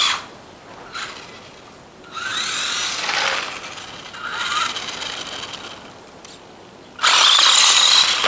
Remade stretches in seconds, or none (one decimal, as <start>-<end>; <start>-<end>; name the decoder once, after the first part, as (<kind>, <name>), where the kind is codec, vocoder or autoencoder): none